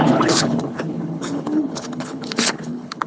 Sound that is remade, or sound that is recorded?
remade